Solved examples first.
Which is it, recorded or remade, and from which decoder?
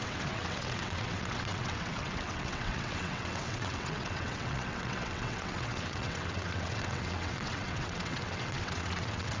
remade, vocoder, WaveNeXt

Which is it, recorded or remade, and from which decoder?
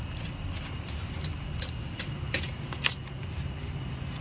recorded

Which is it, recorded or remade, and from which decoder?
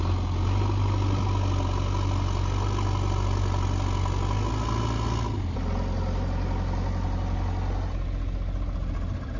recorded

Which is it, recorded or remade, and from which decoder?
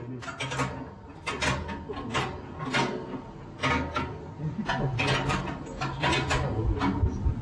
recorded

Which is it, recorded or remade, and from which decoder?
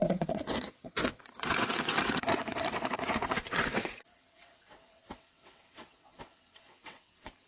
remade, vocoder, WaveNeXt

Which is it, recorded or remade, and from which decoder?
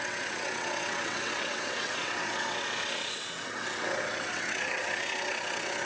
remade, vocoder, WaveNeXt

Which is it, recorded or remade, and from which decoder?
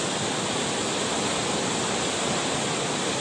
recorded